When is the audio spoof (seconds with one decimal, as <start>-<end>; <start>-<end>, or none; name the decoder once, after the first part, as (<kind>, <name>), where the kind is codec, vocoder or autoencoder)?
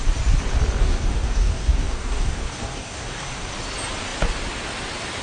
0.8-3.5 (codec, DAC)